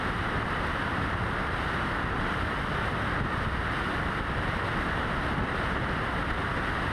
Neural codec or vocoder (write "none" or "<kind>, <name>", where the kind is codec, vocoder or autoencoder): none